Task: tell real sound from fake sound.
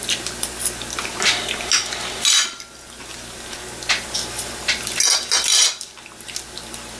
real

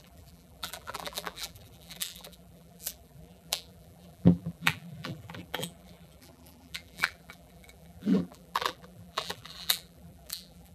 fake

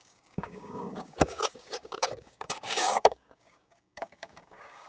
fake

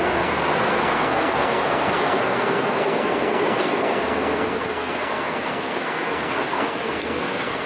fake